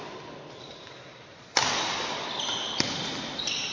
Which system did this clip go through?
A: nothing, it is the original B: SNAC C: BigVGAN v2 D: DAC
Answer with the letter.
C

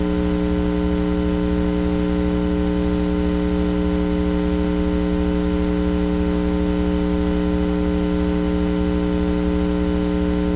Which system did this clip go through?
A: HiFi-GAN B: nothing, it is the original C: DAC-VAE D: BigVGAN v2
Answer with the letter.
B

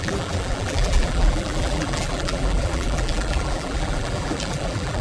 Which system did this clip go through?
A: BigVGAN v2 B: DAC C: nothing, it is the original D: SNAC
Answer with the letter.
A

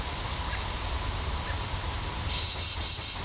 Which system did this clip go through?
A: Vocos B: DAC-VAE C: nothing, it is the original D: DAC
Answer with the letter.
C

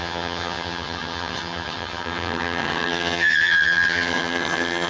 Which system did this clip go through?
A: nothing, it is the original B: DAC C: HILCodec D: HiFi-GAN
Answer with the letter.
D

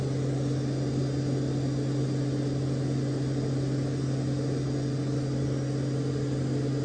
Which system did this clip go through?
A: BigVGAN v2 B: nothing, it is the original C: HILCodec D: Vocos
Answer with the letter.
B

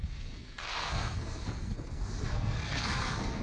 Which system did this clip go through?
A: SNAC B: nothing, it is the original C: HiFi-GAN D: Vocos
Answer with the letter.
A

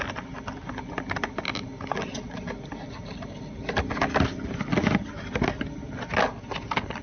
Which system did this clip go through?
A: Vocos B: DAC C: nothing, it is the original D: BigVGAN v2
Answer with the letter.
C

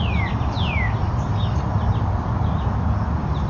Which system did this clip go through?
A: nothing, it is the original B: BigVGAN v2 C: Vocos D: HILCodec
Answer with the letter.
A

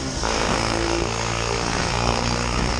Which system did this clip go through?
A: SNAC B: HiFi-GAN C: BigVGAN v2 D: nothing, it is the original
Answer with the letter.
A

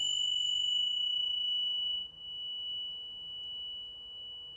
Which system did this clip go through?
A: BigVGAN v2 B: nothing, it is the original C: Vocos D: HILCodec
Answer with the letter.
B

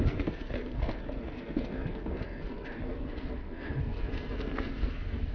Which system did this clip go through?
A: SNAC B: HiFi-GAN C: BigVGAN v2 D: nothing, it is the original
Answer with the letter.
A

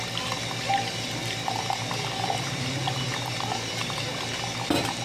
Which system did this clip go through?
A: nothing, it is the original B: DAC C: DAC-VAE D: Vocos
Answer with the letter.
A